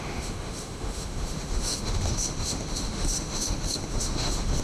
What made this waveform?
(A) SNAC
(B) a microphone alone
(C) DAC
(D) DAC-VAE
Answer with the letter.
D